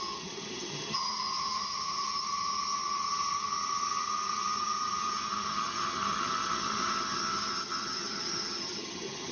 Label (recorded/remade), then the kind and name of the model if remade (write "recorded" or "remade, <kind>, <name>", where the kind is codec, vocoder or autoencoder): remade, vocoder, HiFi-GAN